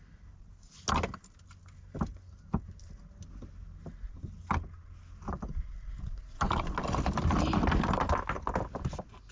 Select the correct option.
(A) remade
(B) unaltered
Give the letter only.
B